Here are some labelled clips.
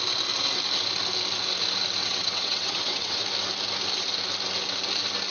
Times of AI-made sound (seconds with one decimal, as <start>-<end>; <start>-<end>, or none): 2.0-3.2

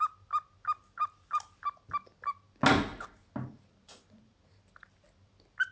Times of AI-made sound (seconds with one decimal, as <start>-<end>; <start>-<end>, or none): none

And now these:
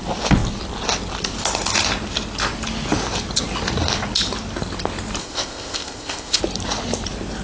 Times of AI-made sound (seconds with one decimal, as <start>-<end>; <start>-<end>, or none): 5.2-6.4

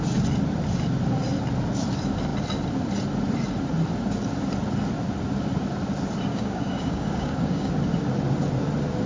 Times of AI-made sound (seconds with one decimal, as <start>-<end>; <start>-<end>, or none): 6.3-7.7

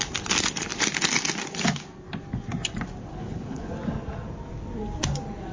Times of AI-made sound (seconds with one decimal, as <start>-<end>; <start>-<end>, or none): 3.1-3.7